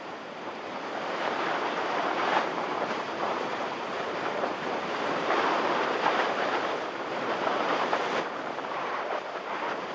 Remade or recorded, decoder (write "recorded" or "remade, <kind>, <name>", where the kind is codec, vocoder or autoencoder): remade, vocoder, BigVGAN v2